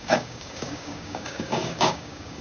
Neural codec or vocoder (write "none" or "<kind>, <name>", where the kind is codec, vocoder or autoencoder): codec, DAC